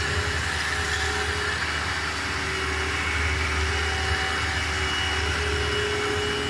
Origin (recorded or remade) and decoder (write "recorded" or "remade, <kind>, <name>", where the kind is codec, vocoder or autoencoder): recorded